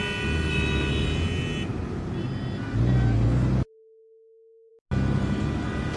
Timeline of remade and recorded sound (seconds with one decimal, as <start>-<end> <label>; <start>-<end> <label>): 0.0-6.0 recorded